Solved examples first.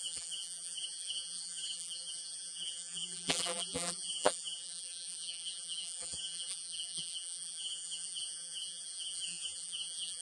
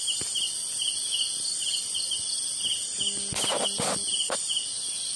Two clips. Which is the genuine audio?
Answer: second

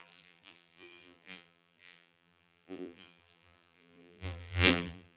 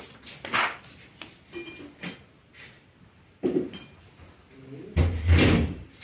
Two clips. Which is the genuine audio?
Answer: second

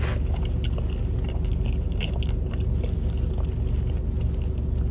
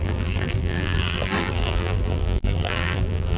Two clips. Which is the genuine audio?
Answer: first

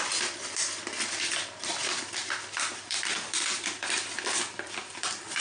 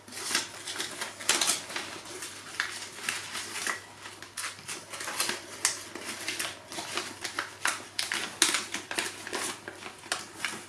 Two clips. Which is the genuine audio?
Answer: second